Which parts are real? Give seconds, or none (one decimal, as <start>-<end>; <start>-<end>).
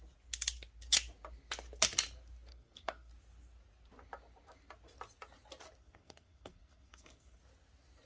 0.0-2.5; 3.1-5.8; 7.4-8.1